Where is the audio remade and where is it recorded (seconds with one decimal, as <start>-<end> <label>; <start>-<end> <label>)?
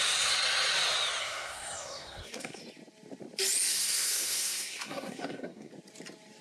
0.0-1.2 recorded; 1.2-2.6 remade; 2.6-3.7 recorded; 3.7-5.7 remade; 5.7-6.4 recorded